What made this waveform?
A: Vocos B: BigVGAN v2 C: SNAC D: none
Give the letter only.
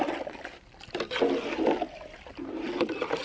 D